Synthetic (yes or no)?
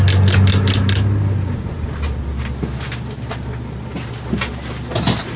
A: no